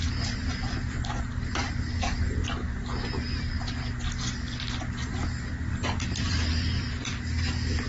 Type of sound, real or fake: real